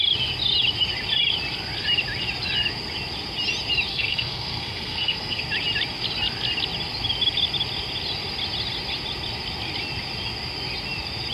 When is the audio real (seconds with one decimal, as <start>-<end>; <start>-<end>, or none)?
0.0-3.9; 5.4-11.3